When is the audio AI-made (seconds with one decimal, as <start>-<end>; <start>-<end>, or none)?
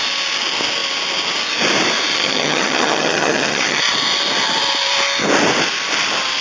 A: 2.1-3.8